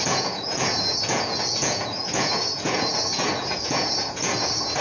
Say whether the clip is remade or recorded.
remade